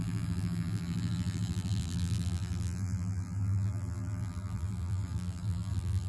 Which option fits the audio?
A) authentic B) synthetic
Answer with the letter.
B